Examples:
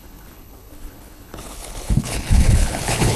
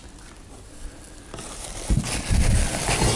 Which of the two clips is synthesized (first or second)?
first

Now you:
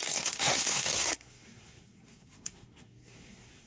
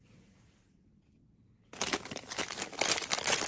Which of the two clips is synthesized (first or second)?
first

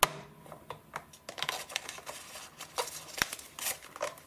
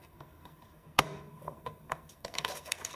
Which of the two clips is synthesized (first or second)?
second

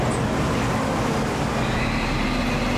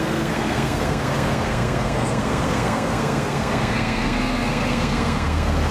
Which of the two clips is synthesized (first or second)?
second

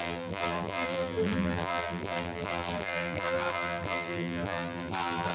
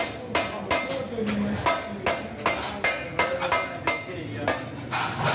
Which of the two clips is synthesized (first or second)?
first